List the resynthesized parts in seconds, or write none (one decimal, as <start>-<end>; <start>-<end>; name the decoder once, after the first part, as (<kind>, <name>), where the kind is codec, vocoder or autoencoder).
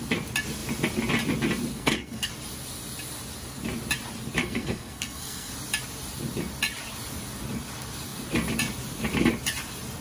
1.7-2.3 (codec, SNAC); 4.4-5.5